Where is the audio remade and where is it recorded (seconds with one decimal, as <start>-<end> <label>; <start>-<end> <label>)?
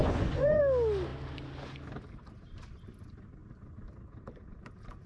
0.0-0.6 remade; 0.6-5.1 recorded